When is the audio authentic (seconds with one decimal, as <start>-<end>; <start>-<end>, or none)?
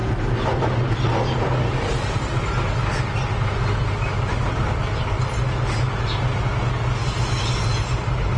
0.0-8.4